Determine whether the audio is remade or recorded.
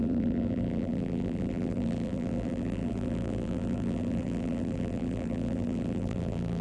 remade